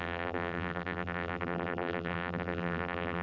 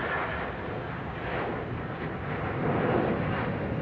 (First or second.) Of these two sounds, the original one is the second